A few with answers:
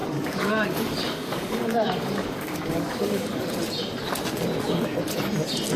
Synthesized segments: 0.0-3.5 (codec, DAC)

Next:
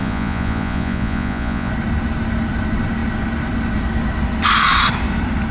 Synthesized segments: 0.0-1.7 (vocoder, Vocos)

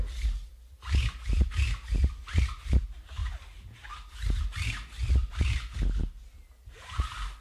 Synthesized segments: none

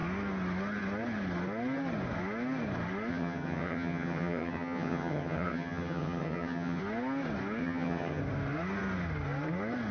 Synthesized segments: 3.1-6.8 (vocoder, HiFi-GAN); 7.6-8.2

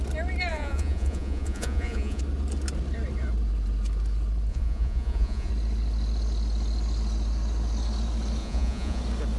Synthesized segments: 0.5-2.2 (vocoder, Vocos); 4.5-5.5; 8.4-9.0

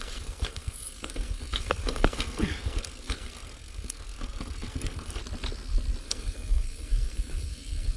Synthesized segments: 0.0-5.2 (codec, SNAC); 6.0-8.0

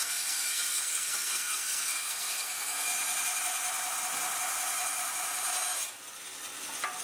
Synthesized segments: 0.0-2.9 (codec, SNAC)

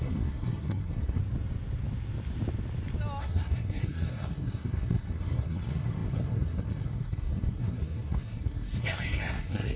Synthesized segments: 0.0-1.2 (codec, SNAC); 3.2-9.8